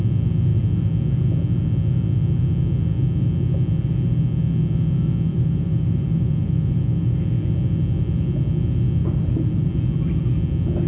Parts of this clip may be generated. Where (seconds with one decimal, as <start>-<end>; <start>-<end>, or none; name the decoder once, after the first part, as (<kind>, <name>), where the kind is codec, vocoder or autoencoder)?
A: 5.3-7.2 (vocoder, BigVGAN v2); 9.0-9.7